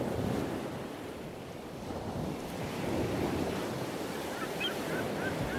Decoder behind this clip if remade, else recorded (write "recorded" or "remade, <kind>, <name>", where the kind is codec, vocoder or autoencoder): recorded